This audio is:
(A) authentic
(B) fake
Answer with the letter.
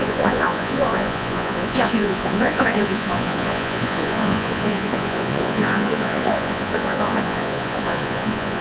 B